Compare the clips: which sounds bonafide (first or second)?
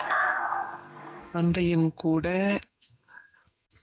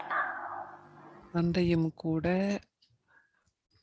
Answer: second